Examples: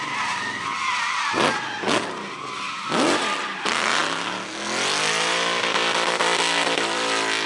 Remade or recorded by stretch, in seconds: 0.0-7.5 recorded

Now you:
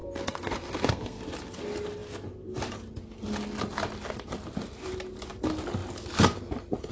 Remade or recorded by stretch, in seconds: 0.0-1.2 remade; 1.2-6.9 recorded

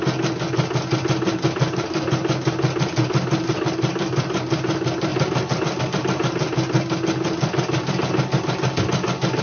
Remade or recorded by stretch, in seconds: 0.0-9.4 recorded

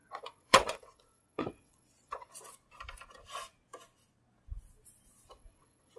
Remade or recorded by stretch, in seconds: 0.0-2.3 remade; 2.3-5.3 recorded; 5.3-6.0 remade

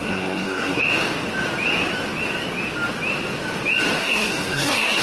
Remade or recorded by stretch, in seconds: 0.0-0.8 remade; 0.8-4.0 recorded; 4.0-5.0 remade

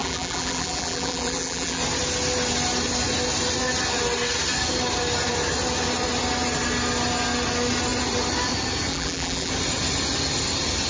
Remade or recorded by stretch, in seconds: 0.0-1.8 remade; 1.8-8.9 recorded; 8.9-9.5 remade; 9.5-10.9 recorded

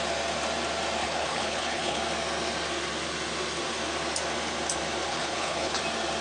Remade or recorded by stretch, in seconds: 0.0-1.0 recorded; 1.0-2.0 remade; 2.0-5.1 recorded; 5.1-5.8 remade; 5.8-6.2 recorded

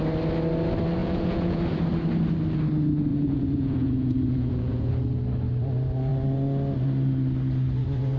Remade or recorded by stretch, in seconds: 0.0-1.0 recorded; 1.0-1.6 remade; 1.6-3.1 recorded; 3.1-4.9 remade; 4.9-8.2 recorded